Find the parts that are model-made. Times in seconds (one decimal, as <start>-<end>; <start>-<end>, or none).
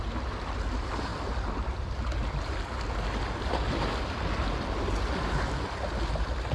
none